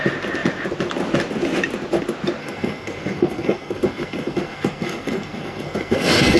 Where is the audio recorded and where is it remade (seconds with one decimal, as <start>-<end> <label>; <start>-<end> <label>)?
0.0-2.4 recorded; 2.4-6.4 remade